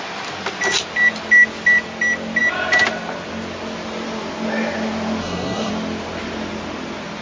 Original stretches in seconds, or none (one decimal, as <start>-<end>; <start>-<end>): 0.0-5.2; 5.7-7.2